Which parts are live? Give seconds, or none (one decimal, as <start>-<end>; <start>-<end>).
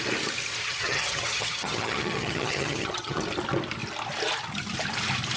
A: 0.0-0.6; 3.2-5.4